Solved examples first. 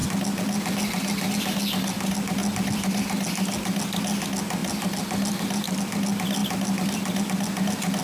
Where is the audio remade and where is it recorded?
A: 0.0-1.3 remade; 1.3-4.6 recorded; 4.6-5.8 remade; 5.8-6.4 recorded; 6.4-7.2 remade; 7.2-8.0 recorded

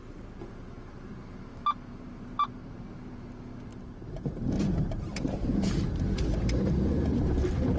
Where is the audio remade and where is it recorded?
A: 0.0-1.5 recorded; 1.5-3.0 remade; 3.0-3.7 recorded; 3.7-6.2 remade; 6.2-7.8 recorded

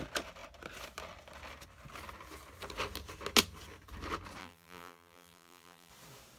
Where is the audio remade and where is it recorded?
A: 0.0-4.4 recorded; 4.4-5.9 remade; 5.9-6.4 recorded

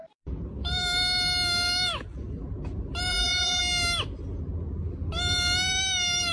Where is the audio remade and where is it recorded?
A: 0.0-3.1 recorded; 3.1-3.6 remade; 3.6-6.3 recorded

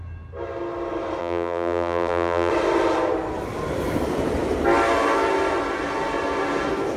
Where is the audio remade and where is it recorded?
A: 0.0-1.2 recorded; 1.2-2.5 remade; 2.5-7.0 recorded

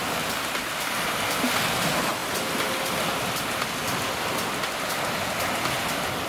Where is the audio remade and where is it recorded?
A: 0.0-0.9 remade; 0.9-6.3 recorded